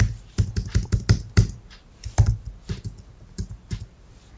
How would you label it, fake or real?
fake